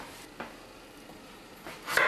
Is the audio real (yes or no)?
yes